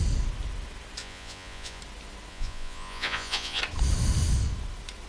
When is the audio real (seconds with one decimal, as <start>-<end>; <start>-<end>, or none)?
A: 0.0-1.0; 1.8-2.3; 3.6-5.1